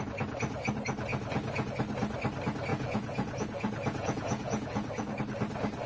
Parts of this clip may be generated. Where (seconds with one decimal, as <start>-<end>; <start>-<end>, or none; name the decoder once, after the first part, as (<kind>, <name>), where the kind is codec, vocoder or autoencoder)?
1.1-1.7 (vocoder, Vocos); 2.7-5.2